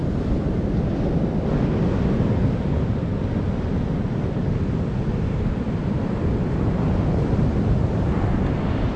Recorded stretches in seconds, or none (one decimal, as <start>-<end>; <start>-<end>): 0.0-9.0